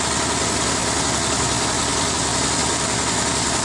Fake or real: real